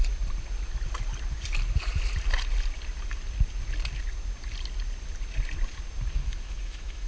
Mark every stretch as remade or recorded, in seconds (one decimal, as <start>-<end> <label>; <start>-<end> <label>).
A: 0.0-6.2 recorded; 6.2-7.1 remade